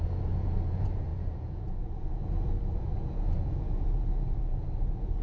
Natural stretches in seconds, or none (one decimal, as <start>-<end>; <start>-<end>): none